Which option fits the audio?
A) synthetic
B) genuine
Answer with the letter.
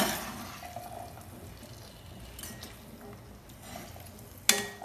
B